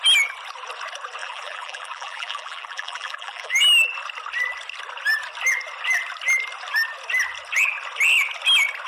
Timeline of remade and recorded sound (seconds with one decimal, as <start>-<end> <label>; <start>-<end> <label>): 0.0-1.2 recorded; 1.2-3.6 remade; 3.6-8.9 recorded